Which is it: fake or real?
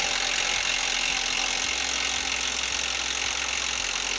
real